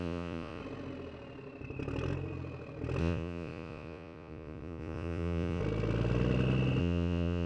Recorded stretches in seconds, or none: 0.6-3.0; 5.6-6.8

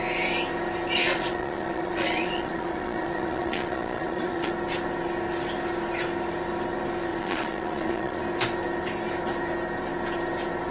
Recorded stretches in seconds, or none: 0.0-1.0; 4.5-7.1; 8.2-10.7

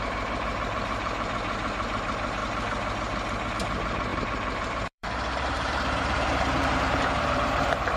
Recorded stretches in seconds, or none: 2.4-3.5

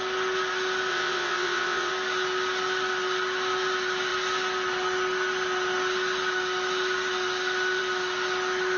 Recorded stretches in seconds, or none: 0.0-0.9; 1.9-8.8

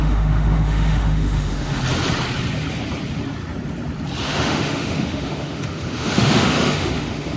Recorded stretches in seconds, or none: 1.8-4.2

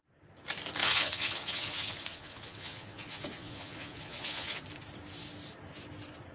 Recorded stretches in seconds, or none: 0.0-0.8; 4.6-6.3